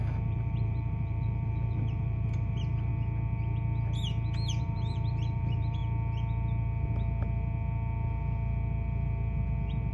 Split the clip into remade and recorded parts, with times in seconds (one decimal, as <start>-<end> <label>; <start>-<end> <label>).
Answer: 0.0-2.9 remade; 2.9-4.6 recorded; 4.6-5.8 remade; 5.8-9.9 recorded